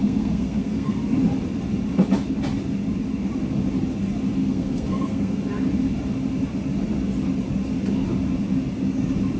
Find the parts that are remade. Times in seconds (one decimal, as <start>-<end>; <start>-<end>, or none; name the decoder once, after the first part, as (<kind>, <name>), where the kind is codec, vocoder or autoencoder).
0.0-1.0 (codec, SNAC); 4.4-5.4